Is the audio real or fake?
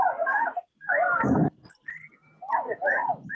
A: real